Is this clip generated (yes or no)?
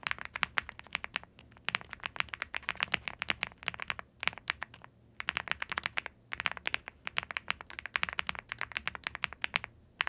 no